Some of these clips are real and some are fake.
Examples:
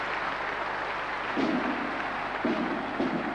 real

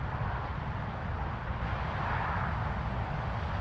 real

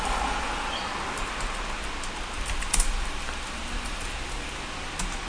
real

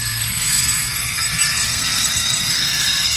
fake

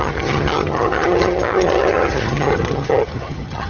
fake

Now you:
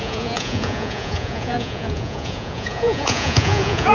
fake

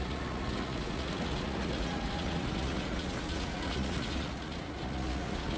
fake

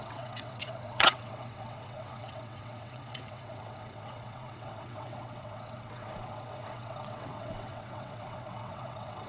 fake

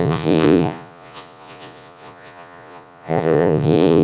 fake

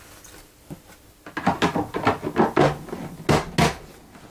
real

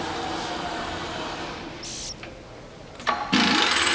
real